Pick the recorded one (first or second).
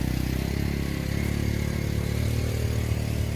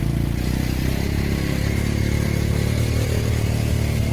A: first